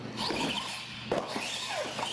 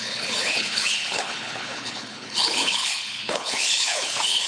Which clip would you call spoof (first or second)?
second